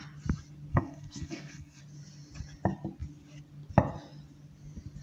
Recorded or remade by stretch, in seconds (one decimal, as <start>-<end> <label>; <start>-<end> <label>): 0.0-0.7 recorded; 0.7-1.8 remade; 1.8-5.0 recorded